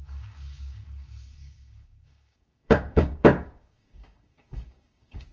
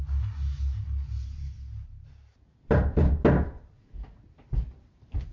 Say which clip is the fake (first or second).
first